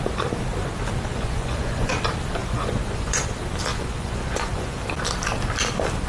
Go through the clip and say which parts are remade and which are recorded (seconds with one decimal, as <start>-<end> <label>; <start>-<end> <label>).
0.0-1.1 recorded; 1.1-1.9 remade; 1.9-2.4 recorded; 2.4-3.2 remade; 3.2-3.7 recorded; 3.7-4.8 remade; 4.8-6.1 recorded